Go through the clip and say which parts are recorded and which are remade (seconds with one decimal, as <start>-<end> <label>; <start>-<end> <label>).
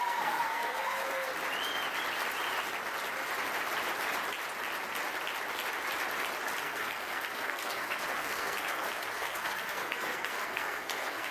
0.0-1.3 remade; 1.3-6.6 recorded; 6.6-11.3 remade